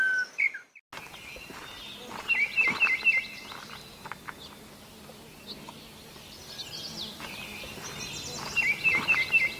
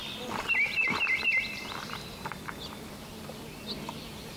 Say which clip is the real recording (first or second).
first